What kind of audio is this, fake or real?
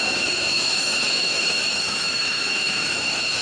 fake